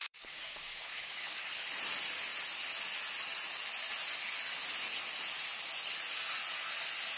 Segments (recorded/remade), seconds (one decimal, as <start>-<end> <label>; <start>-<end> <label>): 0.0-1.6 remade; 1.6-7.2 recorded